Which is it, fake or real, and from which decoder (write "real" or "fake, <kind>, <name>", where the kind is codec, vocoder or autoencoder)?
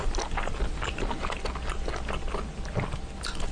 real